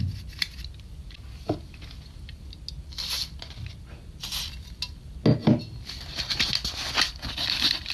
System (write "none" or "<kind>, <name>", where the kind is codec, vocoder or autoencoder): none